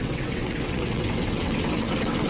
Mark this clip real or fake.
fake